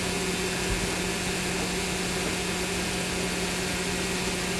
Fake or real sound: real